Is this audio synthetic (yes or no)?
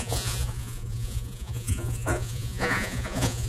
yes